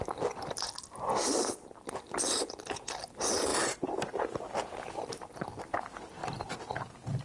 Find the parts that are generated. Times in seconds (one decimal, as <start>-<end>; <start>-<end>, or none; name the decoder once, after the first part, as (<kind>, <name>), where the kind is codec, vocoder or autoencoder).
none